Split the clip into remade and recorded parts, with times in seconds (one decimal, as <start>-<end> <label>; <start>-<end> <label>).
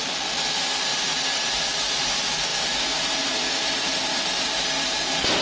0.0-5.4 recorded